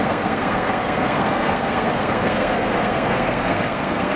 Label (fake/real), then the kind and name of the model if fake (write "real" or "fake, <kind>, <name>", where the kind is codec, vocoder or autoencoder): fake, codec, SNAC